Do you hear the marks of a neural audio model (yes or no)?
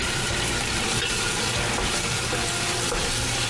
yes